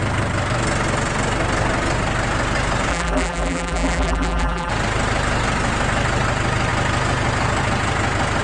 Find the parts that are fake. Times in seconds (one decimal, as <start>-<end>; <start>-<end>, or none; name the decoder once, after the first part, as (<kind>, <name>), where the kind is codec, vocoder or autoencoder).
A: 2.9-4.7 (vocoder, BigVGAN v2)